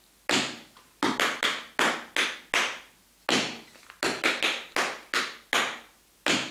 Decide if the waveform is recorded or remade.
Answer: recorded